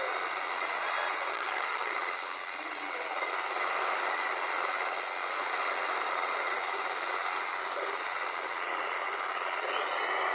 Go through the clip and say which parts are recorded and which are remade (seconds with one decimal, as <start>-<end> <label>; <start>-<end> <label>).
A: 0.0-1.3 recorded; 1.3-2.0 remade; 2.0-10.3 recorded